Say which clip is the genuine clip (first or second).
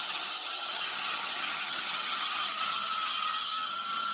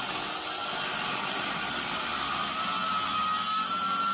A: second